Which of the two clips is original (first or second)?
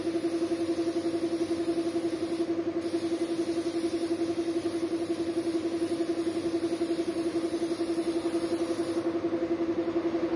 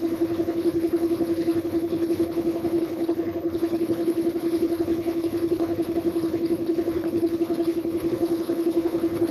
first